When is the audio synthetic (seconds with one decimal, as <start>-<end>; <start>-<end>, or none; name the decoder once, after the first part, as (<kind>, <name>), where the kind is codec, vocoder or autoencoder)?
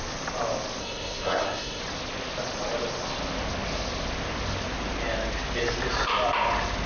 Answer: 0.8-1.8 (codec, SNAC)